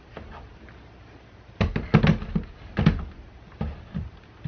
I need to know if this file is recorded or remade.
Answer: recorded